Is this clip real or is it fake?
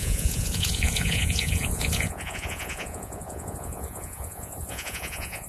fake